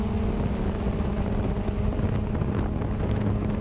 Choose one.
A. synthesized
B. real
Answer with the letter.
B